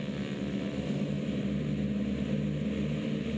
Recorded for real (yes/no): yes